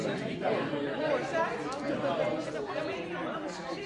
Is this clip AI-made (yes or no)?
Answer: no